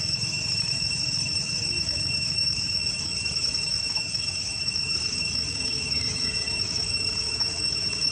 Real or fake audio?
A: fake